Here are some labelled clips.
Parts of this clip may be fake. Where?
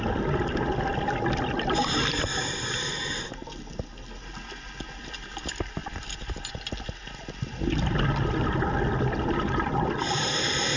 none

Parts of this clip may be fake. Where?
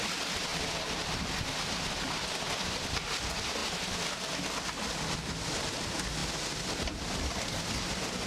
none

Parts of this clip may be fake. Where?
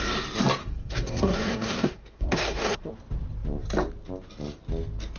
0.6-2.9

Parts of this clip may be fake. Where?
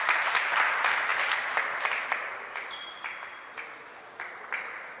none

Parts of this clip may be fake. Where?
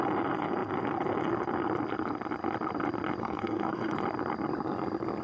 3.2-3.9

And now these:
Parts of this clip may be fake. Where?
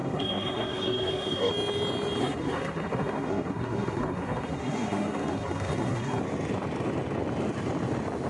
0.0-1.5; 2.2-6.2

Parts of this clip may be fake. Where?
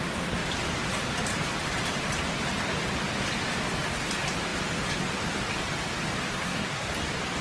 6.3-6.9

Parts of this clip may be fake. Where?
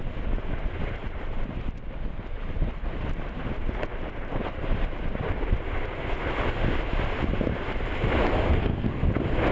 8.5-9.1